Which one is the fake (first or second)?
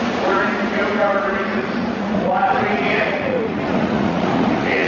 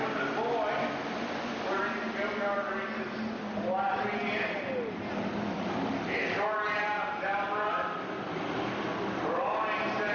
first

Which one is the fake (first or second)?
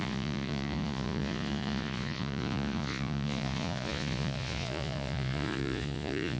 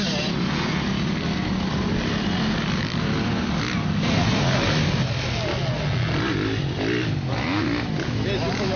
first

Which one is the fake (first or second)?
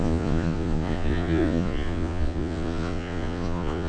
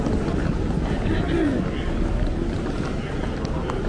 first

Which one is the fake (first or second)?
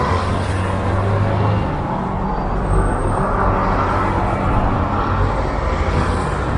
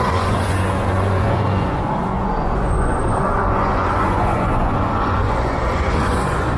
second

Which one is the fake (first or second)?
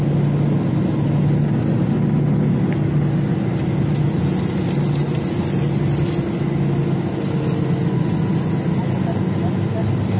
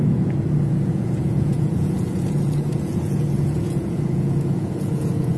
second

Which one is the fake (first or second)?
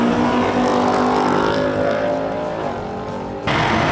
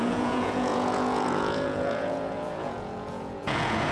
second